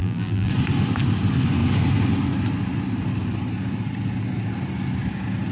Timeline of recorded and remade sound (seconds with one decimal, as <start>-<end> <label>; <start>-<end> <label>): 0.0-0.5 remade; 0.5-5.5 recorded